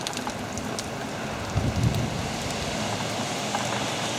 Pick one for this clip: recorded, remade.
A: recorded